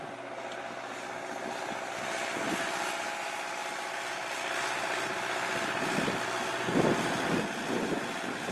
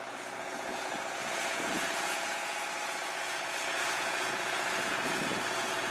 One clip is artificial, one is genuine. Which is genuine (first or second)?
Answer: first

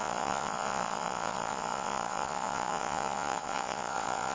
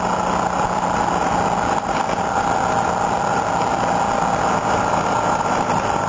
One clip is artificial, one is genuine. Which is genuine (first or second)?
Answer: second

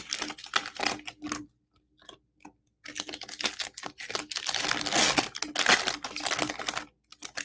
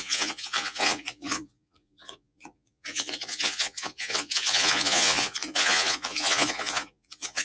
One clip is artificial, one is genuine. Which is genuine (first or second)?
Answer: first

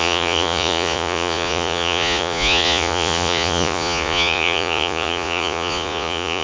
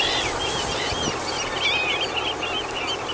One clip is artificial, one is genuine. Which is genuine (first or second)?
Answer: second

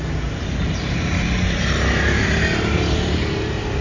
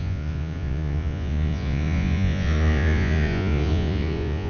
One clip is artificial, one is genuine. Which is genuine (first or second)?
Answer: first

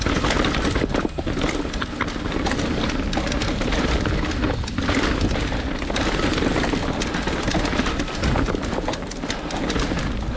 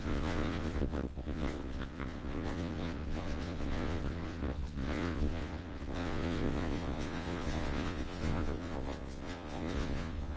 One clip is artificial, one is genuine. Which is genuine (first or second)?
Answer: first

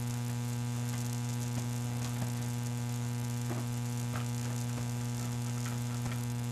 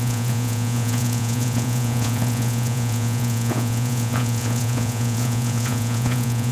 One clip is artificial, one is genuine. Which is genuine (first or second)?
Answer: first